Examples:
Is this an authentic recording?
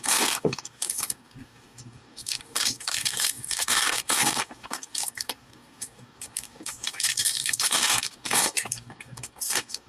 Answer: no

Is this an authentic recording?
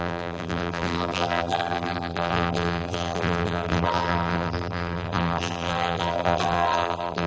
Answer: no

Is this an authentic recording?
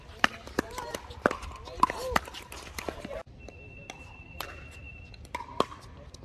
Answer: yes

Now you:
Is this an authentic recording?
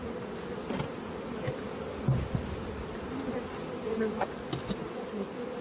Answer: yes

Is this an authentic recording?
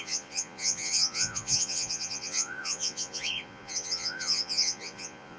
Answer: no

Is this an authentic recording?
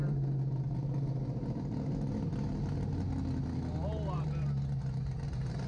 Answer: yes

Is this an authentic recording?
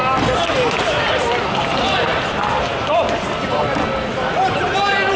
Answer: yes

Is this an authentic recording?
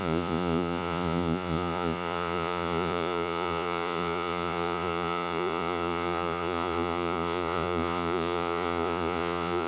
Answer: no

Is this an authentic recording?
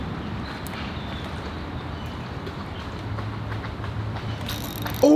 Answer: no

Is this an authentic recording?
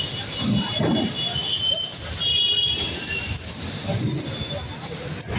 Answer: yes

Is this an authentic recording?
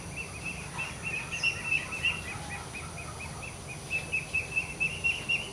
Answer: yes